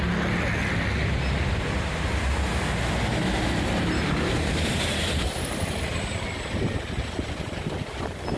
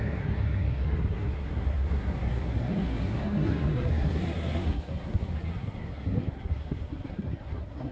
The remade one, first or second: second